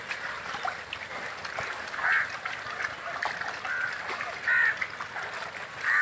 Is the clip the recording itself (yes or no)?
yes